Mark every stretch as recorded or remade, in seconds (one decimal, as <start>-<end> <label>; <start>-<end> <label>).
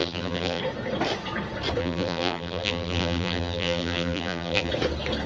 0.0-0.6 remade; 0.6-1.8 recorded; 1.8-4.7 remade; 4.7-5.3 recorded